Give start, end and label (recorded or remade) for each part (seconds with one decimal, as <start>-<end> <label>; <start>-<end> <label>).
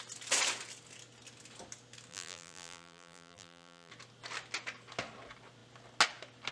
0.0-2.1 recorded; 2.1-3.9 remade; 3.9-6.5 recorded